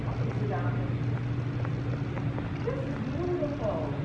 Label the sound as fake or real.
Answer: real